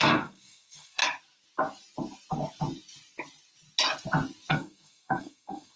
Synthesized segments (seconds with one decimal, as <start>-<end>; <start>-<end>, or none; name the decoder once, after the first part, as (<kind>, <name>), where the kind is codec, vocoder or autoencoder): 0.0-1.0 (codec, SNAC); 4.5-5.8